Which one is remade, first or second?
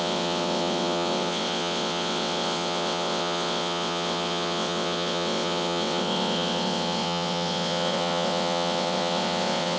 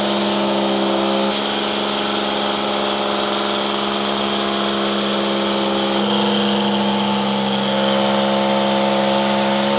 first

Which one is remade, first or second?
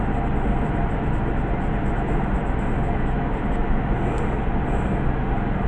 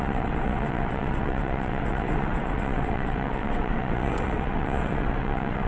second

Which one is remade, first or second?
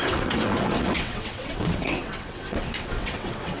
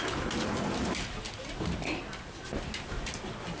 first